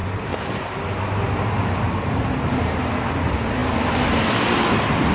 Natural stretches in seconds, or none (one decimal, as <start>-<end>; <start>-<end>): 3.1-5.1